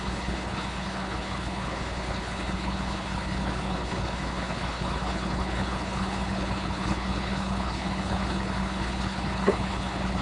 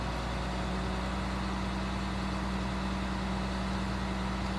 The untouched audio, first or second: second